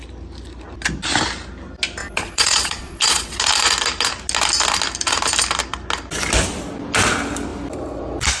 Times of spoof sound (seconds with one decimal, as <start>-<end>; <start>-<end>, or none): 2.0-3.4